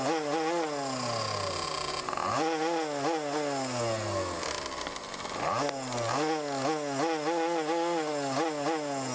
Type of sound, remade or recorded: recorded